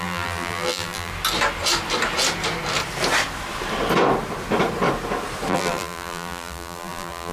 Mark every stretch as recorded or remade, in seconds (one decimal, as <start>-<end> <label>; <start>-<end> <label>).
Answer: 0.0-1.1 remade; 1.1-5.5 recorded; 5.5-7.3 remade